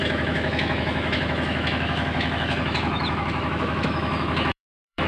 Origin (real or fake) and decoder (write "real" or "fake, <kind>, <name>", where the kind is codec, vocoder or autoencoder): fake, autoencoder, DAC-VAE